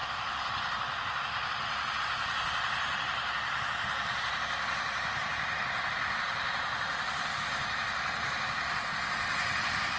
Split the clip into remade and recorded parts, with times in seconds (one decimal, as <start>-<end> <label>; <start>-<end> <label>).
0.0-10.0 recorded